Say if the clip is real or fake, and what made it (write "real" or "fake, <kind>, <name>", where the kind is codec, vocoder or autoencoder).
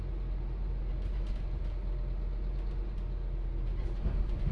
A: real